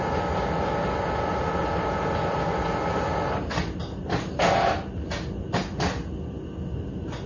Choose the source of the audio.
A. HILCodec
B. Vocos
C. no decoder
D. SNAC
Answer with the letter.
C